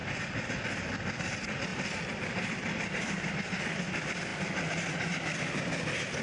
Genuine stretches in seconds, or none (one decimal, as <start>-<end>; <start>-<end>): 1.2-1.7; 3.8-6.2